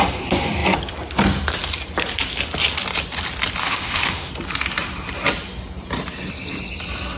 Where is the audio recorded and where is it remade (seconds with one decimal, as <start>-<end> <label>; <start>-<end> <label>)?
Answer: 0.0-3.6 recorded; 3.6-4.3 remade; 4.3-7.2 recorded